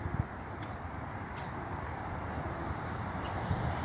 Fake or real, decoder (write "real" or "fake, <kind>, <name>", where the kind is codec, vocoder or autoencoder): fake, vocoder, BigVGAN v2